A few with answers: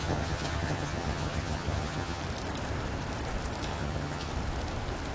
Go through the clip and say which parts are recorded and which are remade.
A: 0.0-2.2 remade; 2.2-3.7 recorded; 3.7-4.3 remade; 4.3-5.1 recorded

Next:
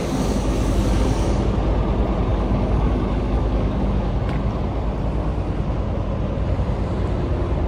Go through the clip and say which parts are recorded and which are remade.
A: 0.0-1.4 remade; 1.4-2.3 recorded; 2.3-4.2 remade; 4.2-7.7 recorded

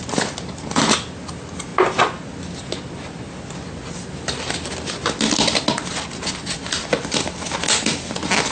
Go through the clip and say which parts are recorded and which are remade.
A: 0.0-8.5 recorded

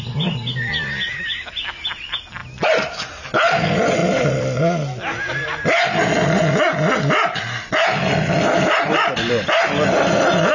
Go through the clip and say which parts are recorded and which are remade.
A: 0.0-4.0 recorded; 4.0-4.6 remade; 4.6-10.5 recorded

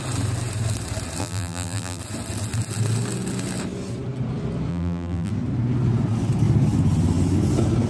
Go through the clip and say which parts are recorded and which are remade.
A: 0.0-1.2 recorded; 1.2-2.0 remade; 2.0-4.7 recorded; 4.7-5.3 remade; 5.3-7.9 recorded

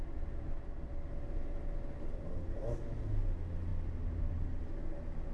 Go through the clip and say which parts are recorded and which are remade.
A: 0.0-5.3 recorded